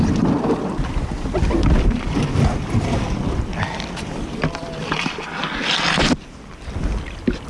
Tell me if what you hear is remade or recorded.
recorded